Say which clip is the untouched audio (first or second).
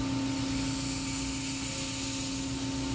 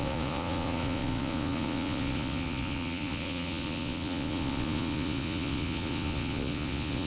first